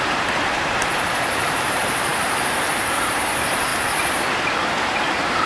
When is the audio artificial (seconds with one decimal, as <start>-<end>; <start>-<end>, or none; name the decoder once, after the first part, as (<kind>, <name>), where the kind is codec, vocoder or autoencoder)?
0.0-3.7 (vocoder, BigVGAN v2); 4.4-5.5